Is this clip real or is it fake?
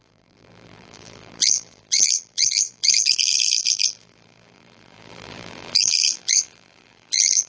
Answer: fake